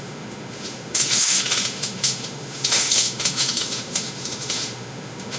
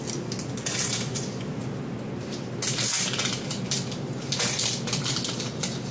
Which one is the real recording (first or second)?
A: second